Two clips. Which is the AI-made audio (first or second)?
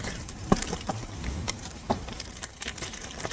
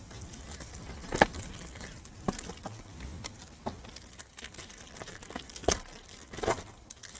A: first